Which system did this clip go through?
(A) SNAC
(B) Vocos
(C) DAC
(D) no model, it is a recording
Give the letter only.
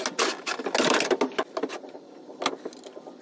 D